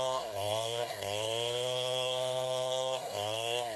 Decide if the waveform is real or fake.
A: fake